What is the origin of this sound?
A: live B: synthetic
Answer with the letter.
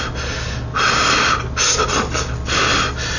A